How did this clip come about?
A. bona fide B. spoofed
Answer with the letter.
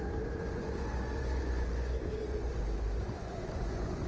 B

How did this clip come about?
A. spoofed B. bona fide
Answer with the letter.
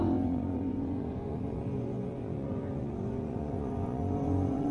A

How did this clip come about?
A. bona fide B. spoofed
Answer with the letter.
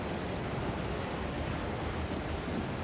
A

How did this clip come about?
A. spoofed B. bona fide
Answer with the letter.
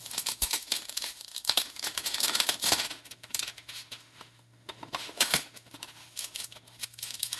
A